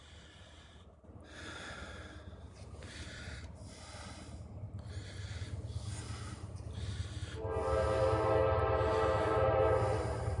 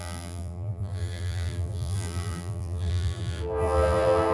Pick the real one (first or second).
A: first